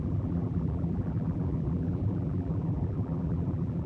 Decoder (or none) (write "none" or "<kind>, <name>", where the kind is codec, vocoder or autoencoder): vocoder, BigVGAN v2